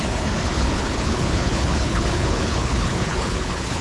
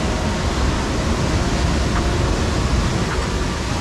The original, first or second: second